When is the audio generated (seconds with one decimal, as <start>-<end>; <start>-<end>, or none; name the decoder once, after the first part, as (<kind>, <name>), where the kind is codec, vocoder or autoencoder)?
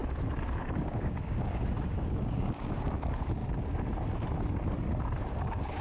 0.6-3.4 (codec, DAC); 5.2-5.8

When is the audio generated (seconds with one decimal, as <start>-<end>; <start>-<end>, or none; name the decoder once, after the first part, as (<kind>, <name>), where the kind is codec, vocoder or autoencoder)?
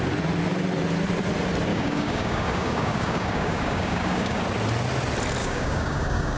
1.7-4.4 (codec, DAC); 5.4-6.4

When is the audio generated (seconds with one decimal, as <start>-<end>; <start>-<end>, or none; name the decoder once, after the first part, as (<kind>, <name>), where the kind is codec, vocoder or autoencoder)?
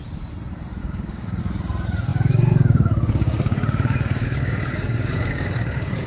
0.8-1.4 (codec, DAC); 2.1-6.1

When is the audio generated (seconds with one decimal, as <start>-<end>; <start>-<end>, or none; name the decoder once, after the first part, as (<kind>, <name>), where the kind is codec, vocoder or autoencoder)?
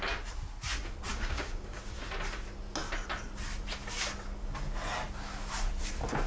1.1-1.8 (codec, DAC)